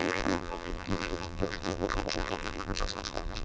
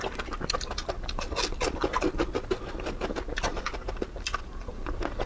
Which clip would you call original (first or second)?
second